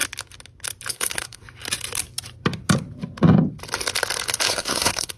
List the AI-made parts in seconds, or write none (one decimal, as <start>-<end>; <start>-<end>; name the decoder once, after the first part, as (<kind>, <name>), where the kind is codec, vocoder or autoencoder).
0.9-1.4 (codec, SNAC); 4.5-5.2